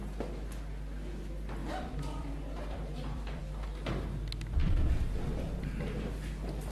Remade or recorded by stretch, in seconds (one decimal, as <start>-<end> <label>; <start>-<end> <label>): 0.0-1.6 recorded; 1.6-3.4 remade; 3.4-4.6 recorded; 4.6-5.2 remade; 5.2-6.7 recorded